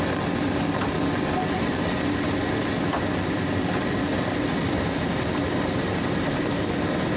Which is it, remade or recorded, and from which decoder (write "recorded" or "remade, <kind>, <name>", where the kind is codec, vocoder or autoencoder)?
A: recorded